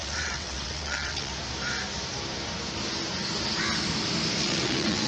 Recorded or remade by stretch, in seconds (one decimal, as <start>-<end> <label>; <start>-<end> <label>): 0.0-1.3 remade; 1.3-4.4 recorded; 4.4-5.1 remade